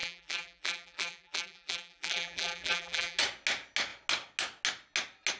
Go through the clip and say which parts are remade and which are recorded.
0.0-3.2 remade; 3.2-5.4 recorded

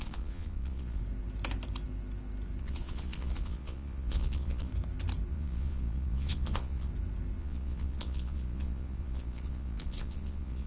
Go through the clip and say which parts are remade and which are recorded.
0.0-1.0 remade; 1.0-2.6 recorded; 2.6-4.7 remade; 4.7-5.3 recorded; 5.3-6.9 remade; 6.9-7.4 recorded; 7.4-10.7 remade

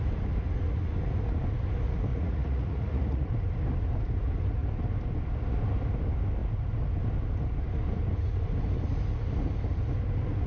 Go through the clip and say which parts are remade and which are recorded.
0.0-2.1 recorded; 2.1-3.3 remade; 3.3-10.5 recorded

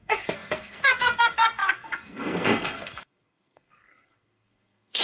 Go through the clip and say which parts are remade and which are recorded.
0.0-5.0 remade